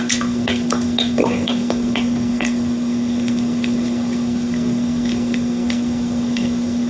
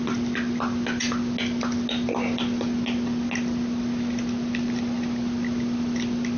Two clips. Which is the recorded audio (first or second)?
second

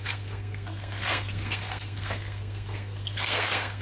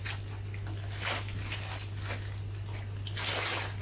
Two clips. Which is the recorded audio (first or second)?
second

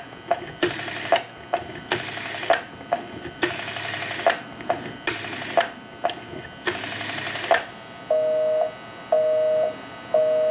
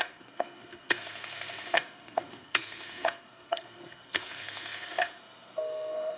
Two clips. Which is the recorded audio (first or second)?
first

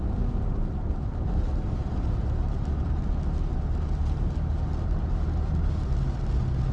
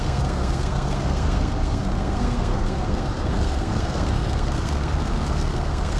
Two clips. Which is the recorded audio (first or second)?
first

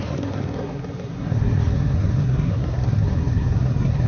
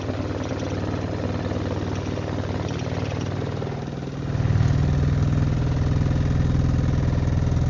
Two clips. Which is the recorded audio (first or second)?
second